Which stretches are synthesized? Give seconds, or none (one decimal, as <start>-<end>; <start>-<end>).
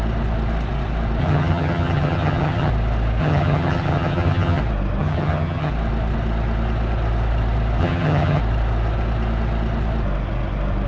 1.2-2.7; 3.2-4.6; 5.0-5.7; 7.8-8.4